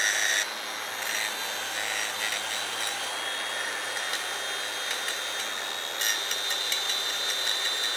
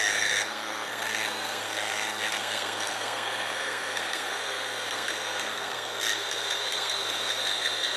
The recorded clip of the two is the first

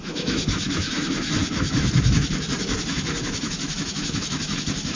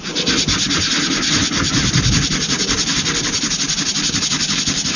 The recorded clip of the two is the second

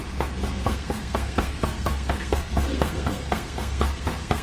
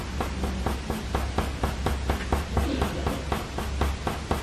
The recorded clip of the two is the second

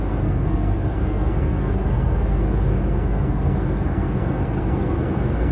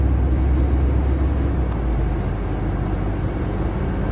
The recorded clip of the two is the second